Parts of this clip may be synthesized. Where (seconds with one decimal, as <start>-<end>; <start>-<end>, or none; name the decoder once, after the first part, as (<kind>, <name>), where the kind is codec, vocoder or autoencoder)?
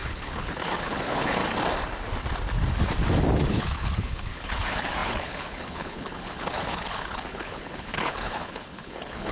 0.0-1.4 (codec, HILCodec); 3.5-9.3